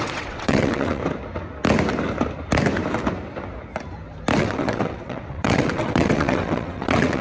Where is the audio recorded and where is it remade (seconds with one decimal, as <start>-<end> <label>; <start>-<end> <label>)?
0.0-1.0 remade; 1.0-4.4 recorded; 4.4-7.2 remade